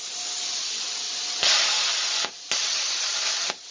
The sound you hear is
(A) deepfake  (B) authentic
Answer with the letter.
B